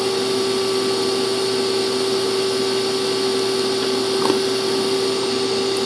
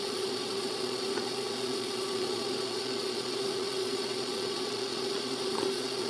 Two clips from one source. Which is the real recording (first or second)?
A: first